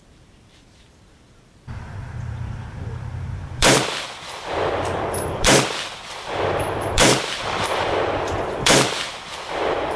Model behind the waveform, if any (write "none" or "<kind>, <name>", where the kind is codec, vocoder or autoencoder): vocoder, BigVGAN v2